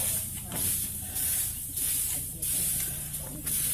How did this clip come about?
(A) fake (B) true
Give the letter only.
A